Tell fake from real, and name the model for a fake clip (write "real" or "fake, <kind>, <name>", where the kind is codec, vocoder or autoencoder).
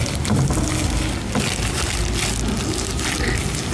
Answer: real